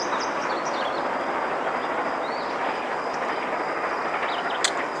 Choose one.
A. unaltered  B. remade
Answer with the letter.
A